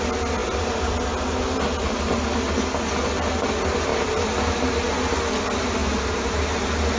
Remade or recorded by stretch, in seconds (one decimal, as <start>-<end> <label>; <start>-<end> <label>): 0.0-3.9 recorded; 3.9-4.6 remade; 4.6-5.8 recorded; 5.8-6.6 remade; 6.6-7.0 recorded